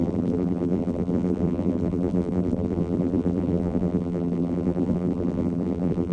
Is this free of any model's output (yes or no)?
no